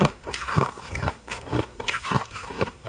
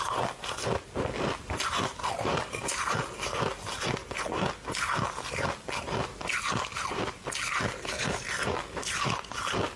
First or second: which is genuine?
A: second